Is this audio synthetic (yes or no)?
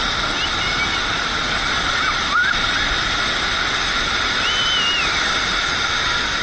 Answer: no